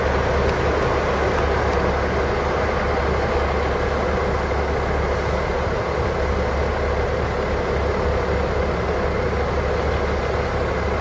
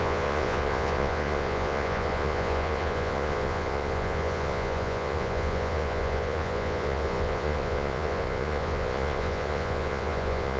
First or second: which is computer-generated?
second